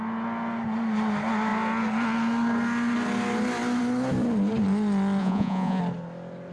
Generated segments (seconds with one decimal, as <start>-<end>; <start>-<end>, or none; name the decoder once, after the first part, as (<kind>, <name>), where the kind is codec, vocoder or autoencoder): 5.2-5.8 (vocoder, Vocos)